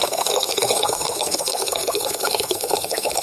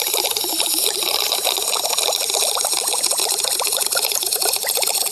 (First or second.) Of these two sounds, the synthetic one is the first